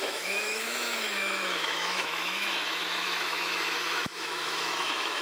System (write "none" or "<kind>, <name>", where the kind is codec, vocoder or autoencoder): autoencoder, DAC-VAE